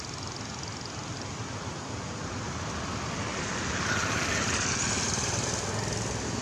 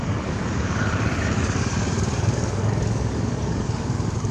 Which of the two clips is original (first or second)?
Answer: first